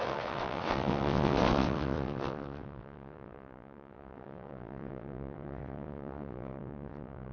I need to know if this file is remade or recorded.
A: remade